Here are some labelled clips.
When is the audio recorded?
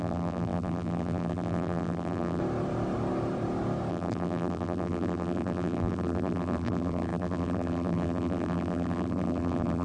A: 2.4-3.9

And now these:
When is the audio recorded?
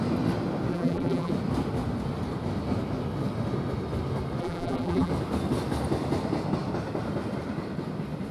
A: 0.0-0.7; 1.3-4.4; 5.1-8.3